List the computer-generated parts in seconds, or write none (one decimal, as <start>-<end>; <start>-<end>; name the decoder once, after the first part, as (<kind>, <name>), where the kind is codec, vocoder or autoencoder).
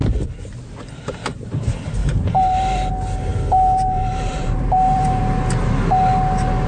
2.0-2.9 (vocoder, BigVGAN v2); 3.3-5.2